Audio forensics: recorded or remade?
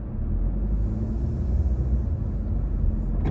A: recorded